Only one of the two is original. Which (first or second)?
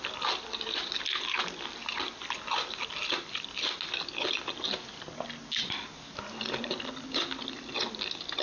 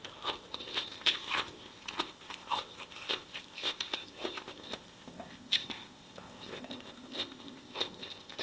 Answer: first